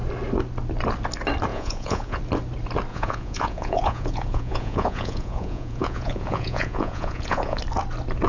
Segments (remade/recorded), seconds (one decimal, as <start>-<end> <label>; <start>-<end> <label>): 0.0-1.5 recorded; 1.5-2.2 remade; 2.2-2.9 recorded; 2.9-7.6 remade; 7.6-8.3 recorded